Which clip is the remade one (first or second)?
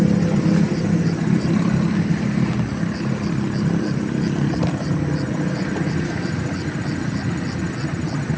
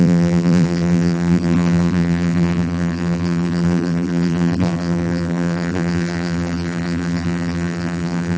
second